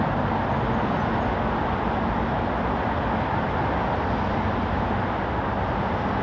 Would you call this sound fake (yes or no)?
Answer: no